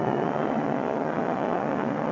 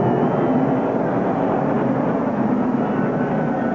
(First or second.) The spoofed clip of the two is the first